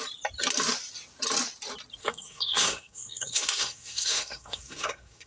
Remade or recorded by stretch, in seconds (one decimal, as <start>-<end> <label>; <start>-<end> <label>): 0.0-2.0 recorded; 2.0-5.3 remade

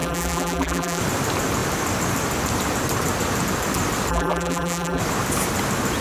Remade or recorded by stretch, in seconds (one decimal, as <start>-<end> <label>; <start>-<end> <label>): 0.0-1.0 remade; 1.0-4.1 recorded; 4.1-5.0 remade; 5.0-6.0 recorded